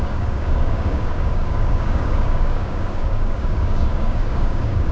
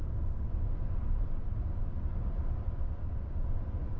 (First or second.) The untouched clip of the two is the second